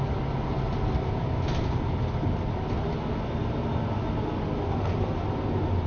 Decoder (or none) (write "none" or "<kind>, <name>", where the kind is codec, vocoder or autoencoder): none